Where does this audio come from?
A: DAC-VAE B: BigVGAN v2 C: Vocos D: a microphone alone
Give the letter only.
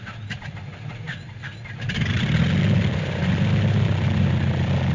B